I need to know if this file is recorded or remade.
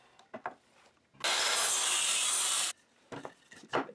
recorded